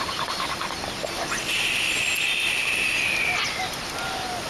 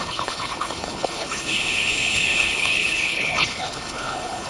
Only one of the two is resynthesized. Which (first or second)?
second